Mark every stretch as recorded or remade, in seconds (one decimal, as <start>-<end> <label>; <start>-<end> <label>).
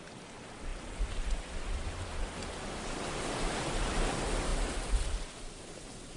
0.0-6.2 recorded